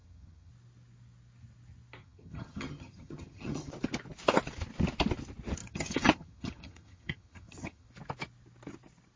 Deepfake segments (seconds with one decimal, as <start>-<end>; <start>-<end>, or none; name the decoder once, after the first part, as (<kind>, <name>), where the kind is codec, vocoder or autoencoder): 0.0-0.5 (vocoder, HiFi-GAN); 2.0-3.7; 5.6-7.9